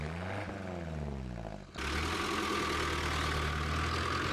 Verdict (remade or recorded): recorded